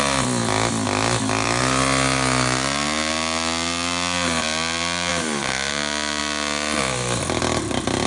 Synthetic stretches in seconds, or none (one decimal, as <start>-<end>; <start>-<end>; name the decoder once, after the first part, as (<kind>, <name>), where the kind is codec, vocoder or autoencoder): none